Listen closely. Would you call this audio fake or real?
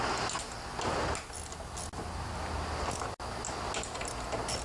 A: real